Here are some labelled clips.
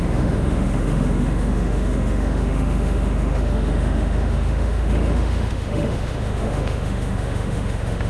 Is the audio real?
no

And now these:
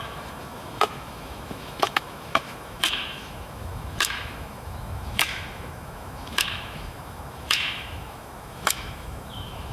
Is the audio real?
no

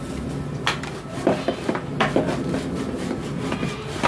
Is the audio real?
yes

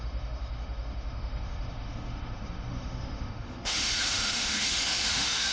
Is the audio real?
no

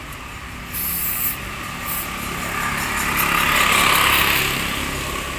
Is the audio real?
yes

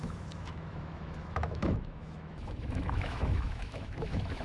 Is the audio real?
no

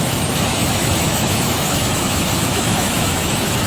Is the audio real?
no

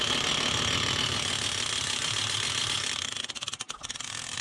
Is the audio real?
yes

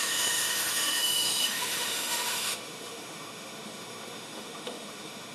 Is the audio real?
no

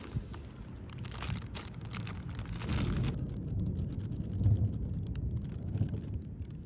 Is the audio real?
yes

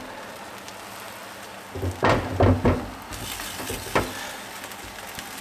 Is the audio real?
yes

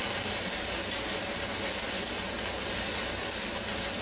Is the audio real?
yes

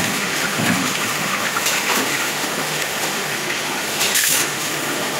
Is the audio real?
no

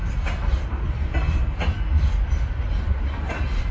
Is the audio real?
yes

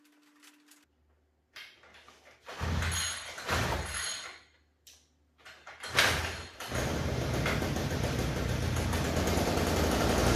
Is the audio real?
yes